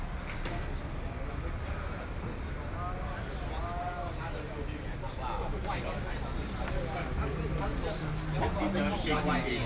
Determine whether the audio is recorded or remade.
recorded